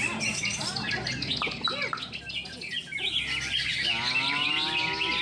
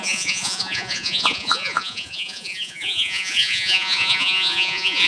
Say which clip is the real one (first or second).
first